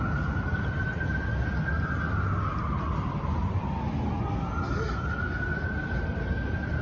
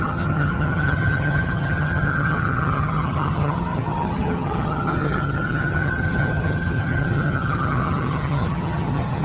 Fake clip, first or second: second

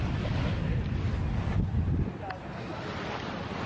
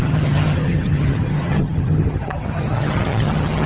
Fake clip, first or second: second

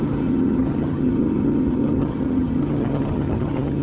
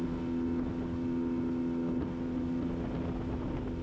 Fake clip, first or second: first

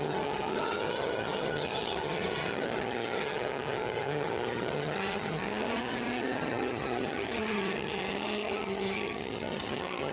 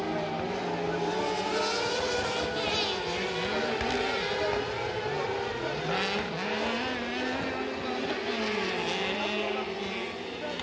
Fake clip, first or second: first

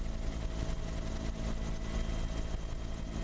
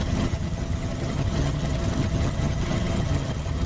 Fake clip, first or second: second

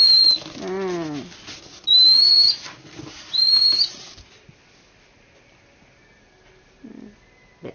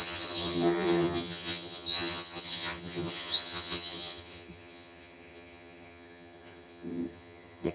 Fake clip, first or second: second